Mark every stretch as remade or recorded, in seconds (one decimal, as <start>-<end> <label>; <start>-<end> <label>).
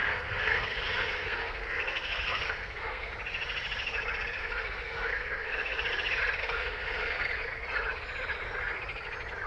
0.0-3.1 remade; 3.1-4.4 recorded; 4.4-5.8 remade; 5.8-6.4 recorded; 6.4-7.3 remade; 7.3-9.5 recorded